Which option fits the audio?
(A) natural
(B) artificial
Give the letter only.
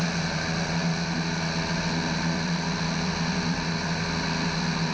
A